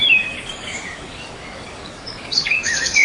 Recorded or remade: remade